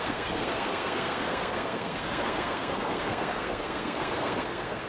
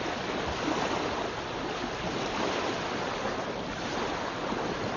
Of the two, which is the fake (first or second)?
first